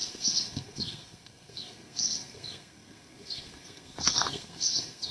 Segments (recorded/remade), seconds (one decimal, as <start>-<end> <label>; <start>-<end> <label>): 0.0-5.1 remade